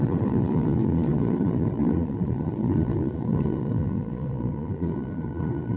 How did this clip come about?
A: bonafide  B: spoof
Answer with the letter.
B